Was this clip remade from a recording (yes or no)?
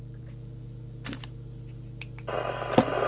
no